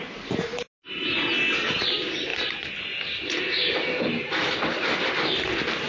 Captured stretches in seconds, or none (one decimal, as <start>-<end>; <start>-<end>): 0.5-1.6